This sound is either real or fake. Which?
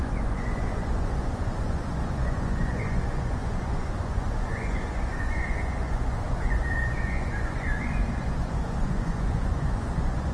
fake